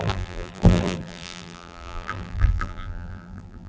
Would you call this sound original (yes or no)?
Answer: no